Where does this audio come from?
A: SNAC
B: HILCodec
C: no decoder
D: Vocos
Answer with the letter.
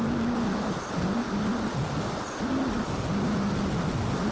C